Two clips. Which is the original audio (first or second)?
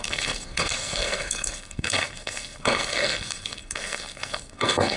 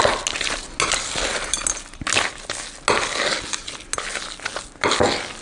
second